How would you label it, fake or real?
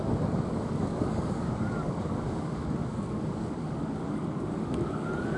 fake